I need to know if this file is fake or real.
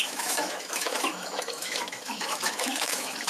fake